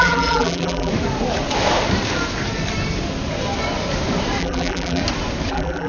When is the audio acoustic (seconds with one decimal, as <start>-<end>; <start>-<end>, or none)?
0.9-4.4; 5.0-5.5

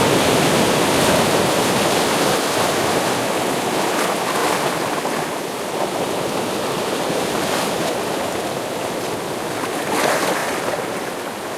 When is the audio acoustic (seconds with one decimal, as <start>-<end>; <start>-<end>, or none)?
0.0-4.4; 9.3-11.6